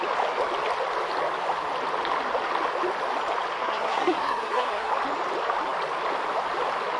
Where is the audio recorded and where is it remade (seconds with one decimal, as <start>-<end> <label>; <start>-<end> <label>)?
0.0-3.6 recorded; 3.6-4.9 remade; 4.9-7.0 recorded